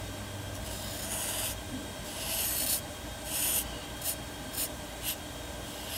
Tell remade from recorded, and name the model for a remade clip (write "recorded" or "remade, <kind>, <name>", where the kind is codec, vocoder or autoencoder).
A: recorded